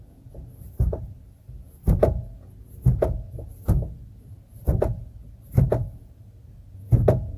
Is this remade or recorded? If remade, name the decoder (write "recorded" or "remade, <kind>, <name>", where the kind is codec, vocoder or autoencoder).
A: remade, vocoder, Vocos